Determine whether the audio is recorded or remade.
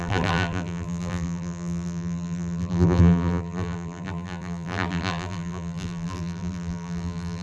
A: remade